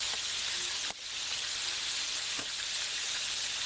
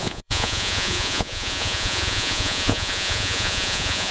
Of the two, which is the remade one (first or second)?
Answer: second